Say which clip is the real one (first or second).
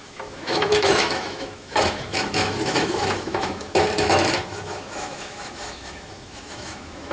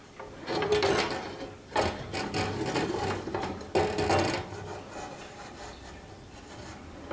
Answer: second